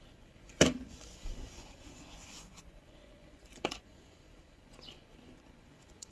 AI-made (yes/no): yes